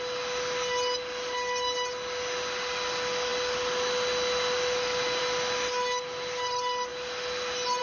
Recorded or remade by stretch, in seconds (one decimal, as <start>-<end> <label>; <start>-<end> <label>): 0.0-7.8 recorded